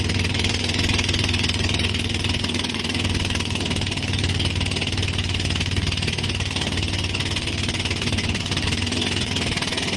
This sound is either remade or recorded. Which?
remade